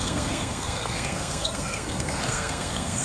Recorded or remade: remade